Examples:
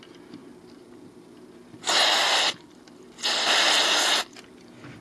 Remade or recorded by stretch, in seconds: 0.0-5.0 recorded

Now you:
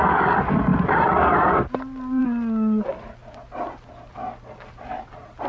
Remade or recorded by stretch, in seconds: 0.0-0.7 recorded; 0.7-1.2 remade; 1.2-5.5 recorded

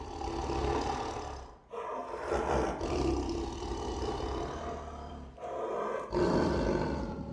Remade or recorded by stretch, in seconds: 0.0-7.3 recorded

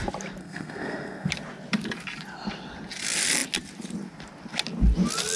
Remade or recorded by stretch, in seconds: 0.0-0.4 recorded; 0.4-1.3 remade; 1.3-5.4 recorded

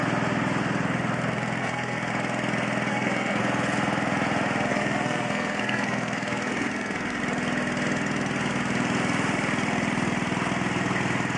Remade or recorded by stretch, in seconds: 0.0-1.6 recorded; 1.6-2.1 remade; 2.1-2.9 recorded; 2.9-3.4 remade; 3.4-4.7 recorded; 4.7-7.2 remade; 7.2-11.4 recorded

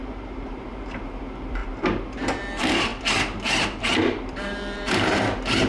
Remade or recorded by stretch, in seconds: 0.0-1.6 remade; 1.6-2.1 recorded; 2.1-2.9 remade; 2.9-3.8 recorded; 3.8-5.7 remade

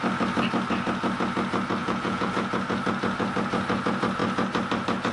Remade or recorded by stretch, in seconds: 0.0-1.8 recorded; 1.8-2.3 remade; 2.3-5.1 recorded